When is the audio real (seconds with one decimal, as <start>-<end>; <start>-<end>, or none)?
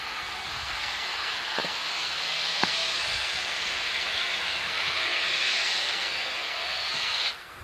none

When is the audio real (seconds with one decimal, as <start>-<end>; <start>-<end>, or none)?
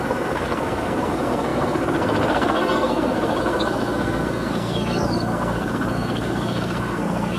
none